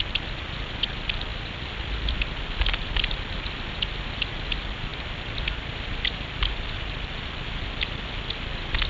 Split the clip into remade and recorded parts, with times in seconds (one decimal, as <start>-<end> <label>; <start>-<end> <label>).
0.0-8.9 recorded

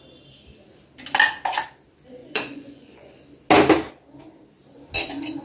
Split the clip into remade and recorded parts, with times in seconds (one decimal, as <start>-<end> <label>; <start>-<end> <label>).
0.0-2.2 recorded; 2.2-3.1 remade; 3.1-5.4 recorded

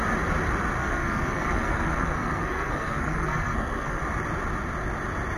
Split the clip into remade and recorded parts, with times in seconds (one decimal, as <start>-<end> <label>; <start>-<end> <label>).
0.0-0.8 recorded; 0.8-4.0 remade; 4.0-5.4 recorded

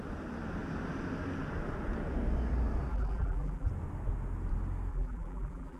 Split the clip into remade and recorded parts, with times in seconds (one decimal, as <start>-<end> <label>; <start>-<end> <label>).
0.0-2.9 recorded; 2.9-3.7 remade; 3.7-4.9 recorded; 4.9-5.8 remade

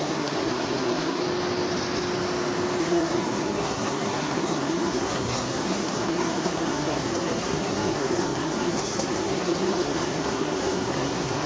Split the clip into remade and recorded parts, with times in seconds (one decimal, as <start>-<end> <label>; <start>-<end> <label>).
0.0-1.2 remade; 1.2-2.8 recorded; 2.8-11.5 remade

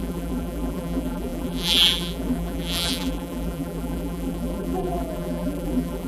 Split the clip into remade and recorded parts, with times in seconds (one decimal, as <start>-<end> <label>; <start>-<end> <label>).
0.0-6.1 remade